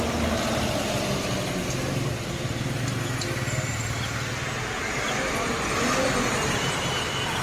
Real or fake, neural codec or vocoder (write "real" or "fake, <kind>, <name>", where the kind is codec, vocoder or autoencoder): real